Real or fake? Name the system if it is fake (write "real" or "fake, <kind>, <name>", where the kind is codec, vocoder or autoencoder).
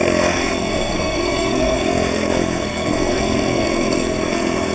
fake, codec, SNAC